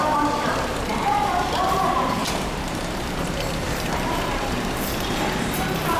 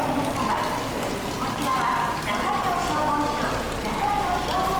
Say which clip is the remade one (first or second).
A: first